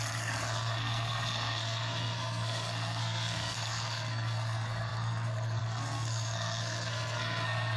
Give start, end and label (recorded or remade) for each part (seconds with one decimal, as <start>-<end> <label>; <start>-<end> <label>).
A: 0.0-7.8 remade